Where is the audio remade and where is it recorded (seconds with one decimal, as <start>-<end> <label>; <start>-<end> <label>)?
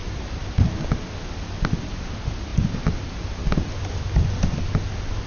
0.0-5.3 recorded